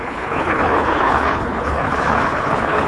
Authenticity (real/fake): fake